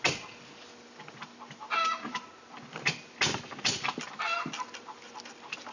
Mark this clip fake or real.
real